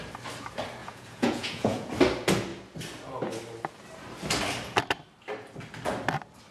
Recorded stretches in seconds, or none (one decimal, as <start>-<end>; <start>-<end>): 0.0-0.8; 1.9-6.5